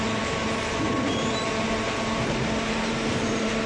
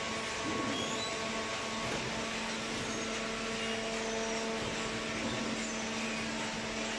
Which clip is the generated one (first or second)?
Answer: first